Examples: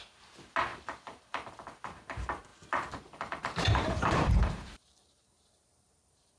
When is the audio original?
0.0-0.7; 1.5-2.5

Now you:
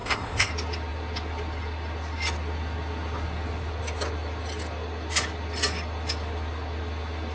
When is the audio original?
0.5-7.3

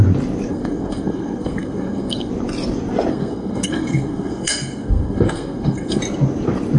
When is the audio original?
0.0-0.5; 2.3-3.1; 6.0-6.8

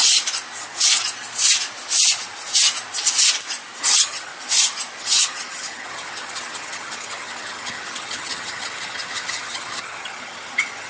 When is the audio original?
0.0-3.8; 4.3-5.0